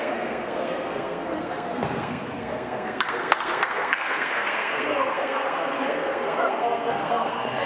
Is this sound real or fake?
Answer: fake